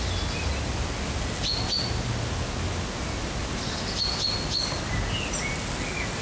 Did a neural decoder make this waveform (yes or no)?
no